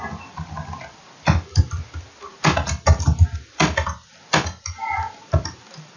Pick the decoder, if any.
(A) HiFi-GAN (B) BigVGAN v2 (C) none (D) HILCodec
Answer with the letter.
C